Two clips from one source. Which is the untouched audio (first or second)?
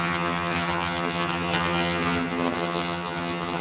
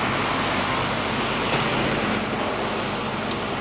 second